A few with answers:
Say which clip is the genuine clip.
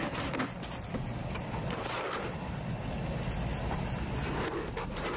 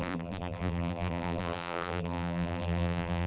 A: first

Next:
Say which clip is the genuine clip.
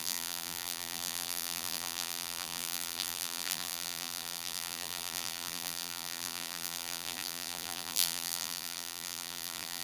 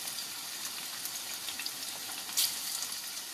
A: second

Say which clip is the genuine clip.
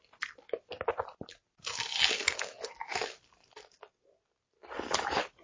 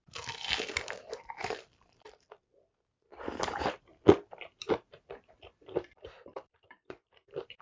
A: first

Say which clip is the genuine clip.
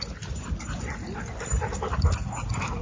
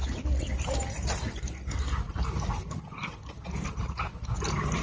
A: second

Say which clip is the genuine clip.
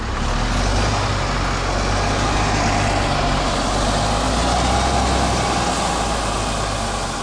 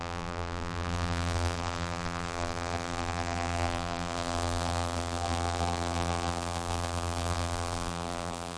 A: first